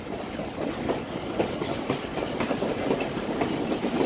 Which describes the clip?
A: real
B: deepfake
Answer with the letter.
A